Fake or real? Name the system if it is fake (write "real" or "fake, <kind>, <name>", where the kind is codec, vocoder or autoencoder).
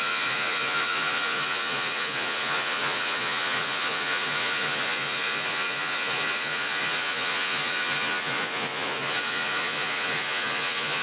fake, vocoder, Vocos